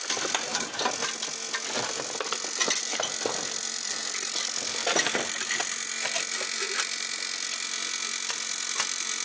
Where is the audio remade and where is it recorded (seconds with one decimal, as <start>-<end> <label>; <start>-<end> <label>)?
0.0-0.5 remade; 0.5-2.8 recorded; 2.8-4.8 remade; 4.8-8.3 recorded; 8.3-9.2 remade